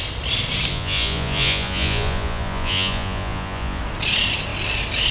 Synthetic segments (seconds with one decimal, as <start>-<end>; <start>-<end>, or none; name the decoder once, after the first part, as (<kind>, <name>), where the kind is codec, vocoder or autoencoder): 0.7-3.8 (vocoder, Vocos)